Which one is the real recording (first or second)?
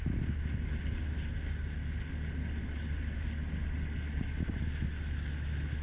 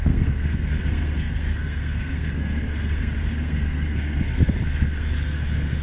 first